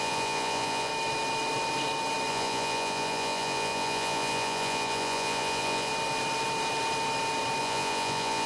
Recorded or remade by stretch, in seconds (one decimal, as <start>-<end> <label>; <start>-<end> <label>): 0.0-0.9 remade; 0.9-2.3 recorded; 2.3-5.9 remade; 5.9-7.6 recorded; 7.6-8.5 remade